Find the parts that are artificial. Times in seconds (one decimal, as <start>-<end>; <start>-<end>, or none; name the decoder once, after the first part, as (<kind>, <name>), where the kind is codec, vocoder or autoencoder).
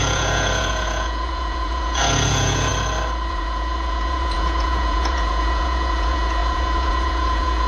0.0-2.7 (vocoder, Vocos); 3.3-7.7